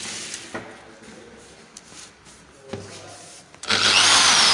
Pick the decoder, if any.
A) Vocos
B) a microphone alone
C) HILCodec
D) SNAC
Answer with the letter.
B